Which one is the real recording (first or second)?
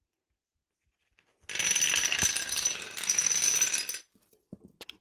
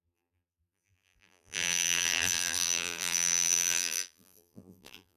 first